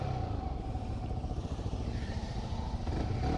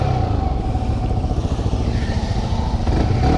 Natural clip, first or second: second